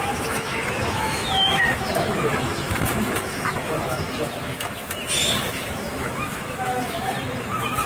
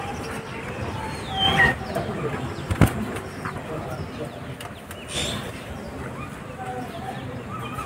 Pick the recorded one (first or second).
second